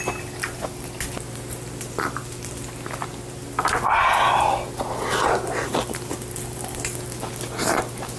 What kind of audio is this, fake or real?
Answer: real